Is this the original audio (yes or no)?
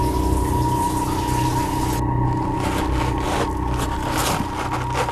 yes